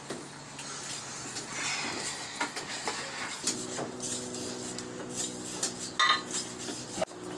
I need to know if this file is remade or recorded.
recorded